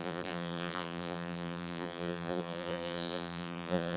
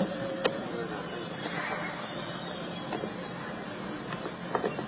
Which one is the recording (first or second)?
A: second